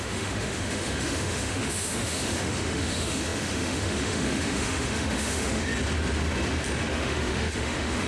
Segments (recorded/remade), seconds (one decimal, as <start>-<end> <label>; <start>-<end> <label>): 0.0-5.7 remade; 5.7-6.9 recorded; 6.9-8.1 remade